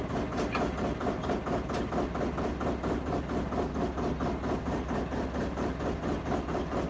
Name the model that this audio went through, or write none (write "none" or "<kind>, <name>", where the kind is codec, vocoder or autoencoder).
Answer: none